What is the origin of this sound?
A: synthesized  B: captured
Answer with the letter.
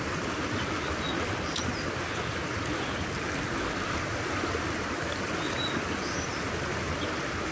B